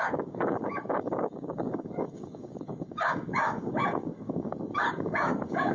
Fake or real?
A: fake